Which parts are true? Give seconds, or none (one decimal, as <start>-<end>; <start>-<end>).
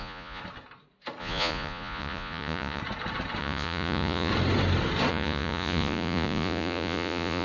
0.4-1.2; 2.8-3.4; 4.3-5.1